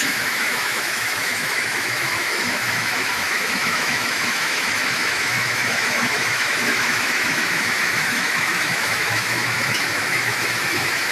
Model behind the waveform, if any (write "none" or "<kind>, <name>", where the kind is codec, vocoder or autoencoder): autoencoder, DAC-VAE